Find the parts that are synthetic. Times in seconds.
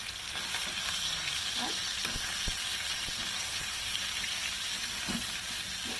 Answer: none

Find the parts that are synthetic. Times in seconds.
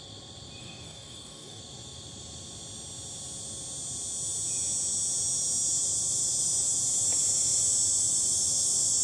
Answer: 0.6-1.6 (codec, DAC)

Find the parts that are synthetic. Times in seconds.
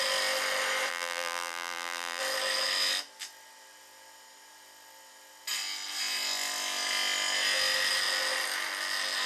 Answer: 0.9-2.2 (vocoder, BigVGAN v2)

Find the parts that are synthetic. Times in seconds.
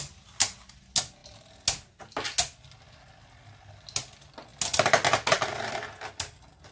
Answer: none